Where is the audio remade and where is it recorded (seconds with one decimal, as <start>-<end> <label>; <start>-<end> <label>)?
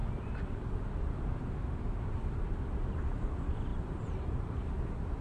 0.0-3.7 recorded; 3.7-4.7 remade; 4.7-5.2 recorded